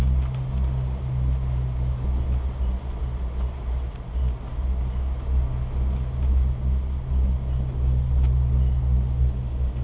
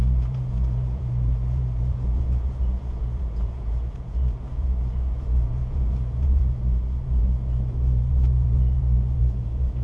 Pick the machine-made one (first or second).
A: second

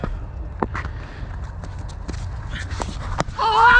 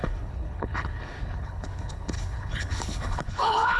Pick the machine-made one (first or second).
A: second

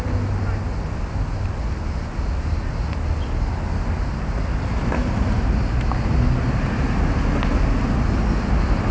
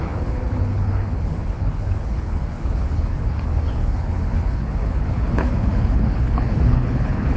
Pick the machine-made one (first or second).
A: second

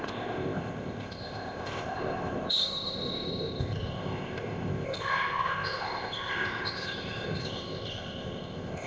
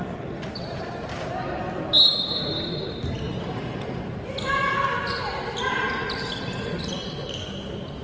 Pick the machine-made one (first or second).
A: first